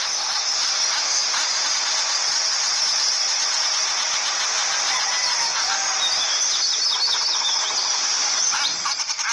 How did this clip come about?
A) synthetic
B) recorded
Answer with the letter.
B